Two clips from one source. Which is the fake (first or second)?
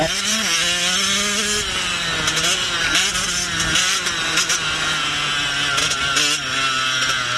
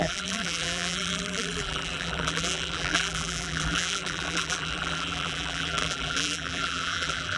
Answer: second